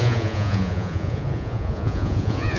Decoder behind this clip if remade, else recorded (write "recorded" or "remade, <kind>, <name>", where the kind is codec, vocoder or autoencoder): remade, vocoder, Vocos